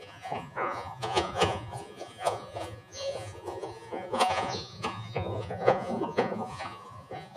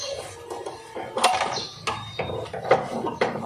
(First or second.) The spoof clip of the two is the first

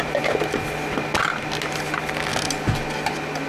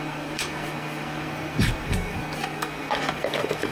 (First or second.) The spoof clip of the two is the second